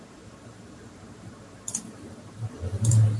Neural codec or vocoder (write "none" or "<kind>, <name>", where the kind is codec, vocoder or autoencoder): vocoder, BigVGAN v2